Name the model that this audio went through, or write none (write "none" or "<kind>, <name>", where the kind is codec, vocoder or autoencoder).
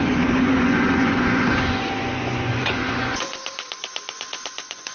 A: vocoder, Vocos